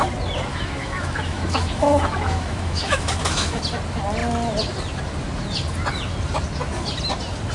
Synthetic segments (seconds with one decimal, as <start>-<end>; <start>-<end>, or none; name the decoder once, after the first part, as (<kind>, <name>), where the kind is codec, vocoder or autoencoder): 0.5-3.6 (autoencoder, DAC-VAE)